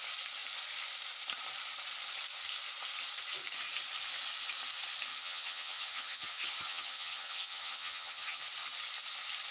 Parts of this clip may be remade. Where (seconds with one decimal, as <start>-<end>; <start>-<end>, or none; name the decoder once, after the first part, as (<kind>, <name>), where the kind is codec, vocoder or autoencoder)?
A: 5.1-8.4 (vocoder, HiFi-GAN)